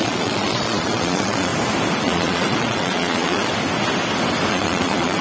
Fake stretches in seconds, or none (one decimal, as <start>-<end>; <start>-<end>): 0.0-1.5; 2.0-3.5; 4.5-5.2

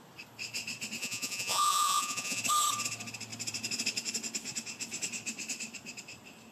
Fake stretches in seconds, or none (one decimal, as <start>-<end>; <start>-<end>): 1.0-2.4

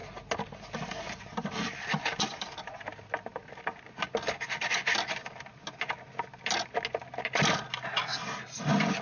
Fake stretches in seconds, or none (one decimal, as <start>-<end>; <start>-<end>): none

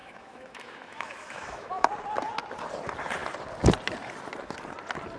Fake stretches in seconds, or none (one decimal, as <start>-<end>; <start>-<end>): 0.0-1.9

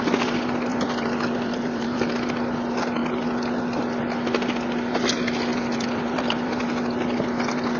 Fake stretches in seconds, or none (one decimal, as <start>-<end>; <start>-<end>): 0.7-2.1; 5.5-6.6

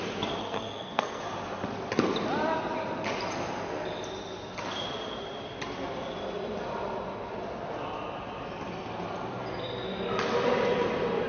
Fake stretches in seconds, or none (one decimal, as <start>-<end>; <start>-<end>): 0.4-1.2

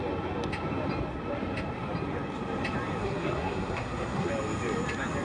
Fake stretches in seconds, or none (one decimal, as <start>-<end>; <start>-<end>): 3.0-4.3

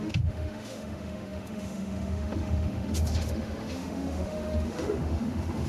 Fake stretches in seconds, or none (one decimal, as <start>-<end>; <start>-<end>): 0.0-5.7